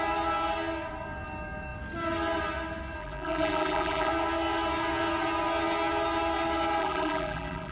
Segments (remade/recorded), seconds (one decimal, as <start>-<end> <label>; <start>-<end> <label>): 0.0-3.0 recorded; 3.0-4.1 remade; 4.1-6.8 recorded; 6.8-7.7 remade